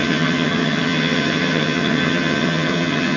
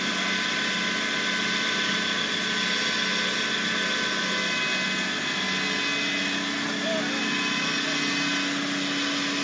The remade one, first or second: first